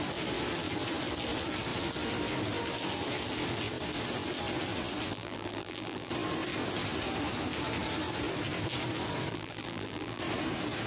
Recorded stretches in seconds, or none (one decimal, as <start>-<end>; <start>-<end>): 0.0-5.1; 6.1-9.3; 10.2-10.9